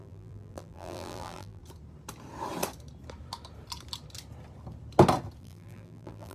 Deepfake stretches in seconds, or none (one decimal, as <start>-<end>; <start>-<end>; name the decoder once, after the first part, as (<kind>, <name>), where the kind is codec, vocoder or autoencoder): 0.0-1.6 (vocoder, BigVGAN v2); 5.4-6.3